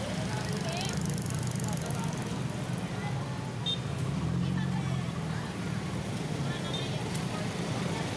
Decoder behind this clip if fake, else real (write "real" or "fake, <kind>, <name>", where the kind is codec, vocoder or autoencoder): real